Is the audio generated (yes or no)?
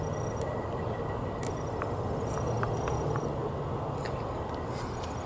no